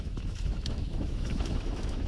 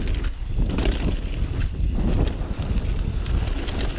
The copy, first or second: first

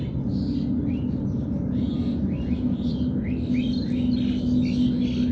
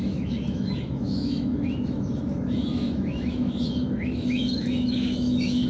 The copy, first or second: second